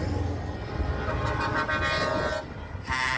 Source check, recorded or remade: recorded